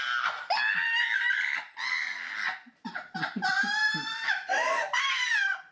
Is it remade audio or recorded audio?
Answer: remade